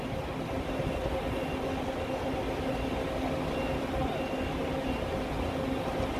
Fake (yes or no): no